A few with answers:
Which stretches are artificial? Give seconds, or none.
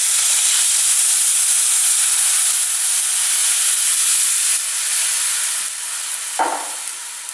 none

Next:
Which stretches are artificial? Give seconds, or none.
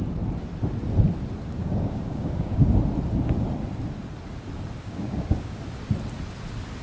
1.6-2.7 (codec, DAC); 4.8-5.6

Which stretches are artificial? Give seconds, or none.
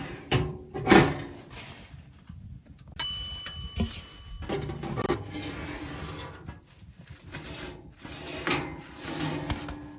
none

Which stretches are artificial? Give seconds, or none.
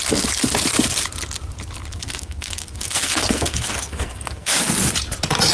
1.9-4.6 (codec, SNAC)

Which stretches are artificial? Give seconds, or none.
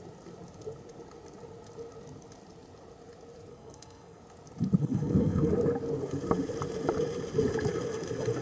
3.5-4.2 (codec, SNAC); 4.8-5.5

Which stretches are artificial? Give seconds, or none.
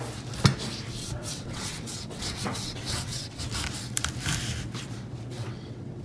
1.0-3.4 (vocoder, WaveNeXt); 5.3-6.0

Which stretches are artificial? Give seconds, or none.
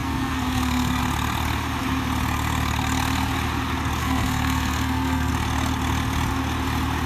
0.0-1.0 (codec, SNAC); 4.0-5.3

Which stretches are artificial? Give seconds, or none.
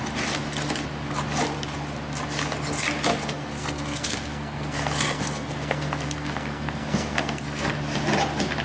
3.1-7.7 (codec, SNAC)